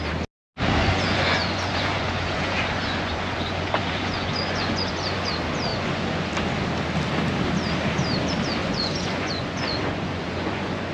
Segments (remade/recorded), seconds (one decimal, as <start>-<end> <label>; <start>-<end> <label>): 0.0-0.8 recorded; 0.8-5.3 remade; 5.3-5.7 recorded; 5.7-6.3 remade; 6.3-8.6 recorded; 8.6-10.9 remade

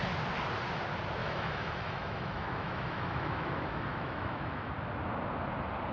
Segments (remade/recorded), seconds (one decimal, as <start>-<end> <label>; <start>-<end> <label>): 0.0-1.2 recorded; 1.2-4.7 remade; 4.7-5.9 recorded

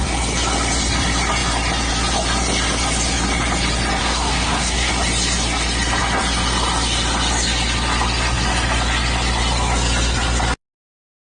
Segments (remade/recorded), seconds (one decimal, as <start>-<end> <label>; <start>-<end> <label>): 0.0-4.0 recorded; 4.0-4.9 remade; 4.9-11.4 recorded

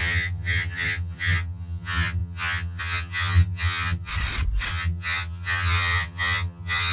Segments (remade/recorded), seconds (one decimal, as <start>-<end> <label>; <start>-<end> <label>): 0.0-4.1 remade; 4.1-4.7 recorded; 4.7-6.9 remade